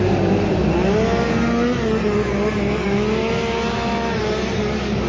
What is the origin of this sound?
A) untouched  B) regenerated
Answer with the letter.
A